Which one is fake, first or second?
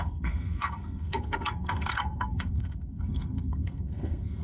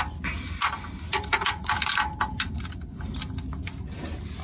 first